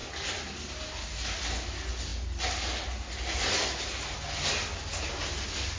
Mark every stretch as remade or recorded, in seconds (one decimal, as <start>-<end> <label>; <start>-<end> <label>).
0.0-5.8 recorded